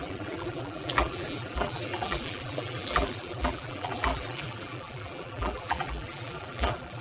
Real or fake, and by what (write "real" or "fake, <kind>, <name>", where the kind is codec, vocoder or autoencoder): fake, vocoder, BigVGAN v2